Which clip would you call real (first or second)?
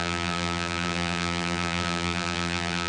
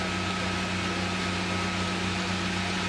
second